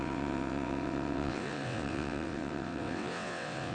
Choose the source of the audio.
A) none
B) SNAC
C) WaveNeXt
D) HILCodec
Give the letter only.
C